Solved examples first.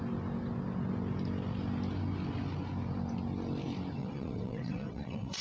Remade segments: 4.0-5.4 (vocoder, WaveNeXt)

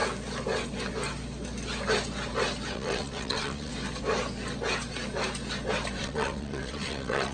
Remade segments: 2.7-3.7 (vocoder, WaveNeXt); 6.0-7.3